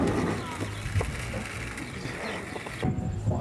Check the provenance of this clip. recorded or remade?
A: recorded